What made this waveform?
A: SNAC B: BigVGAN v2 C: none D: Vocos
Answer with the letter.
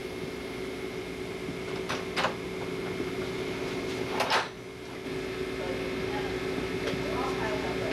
C